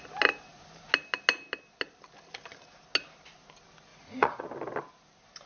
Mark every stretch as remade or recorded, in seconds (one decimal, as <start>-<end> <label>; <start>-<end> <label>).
0.0-3.9 recorded; 3.9-4.4 remade; 4.4-5.5 recorded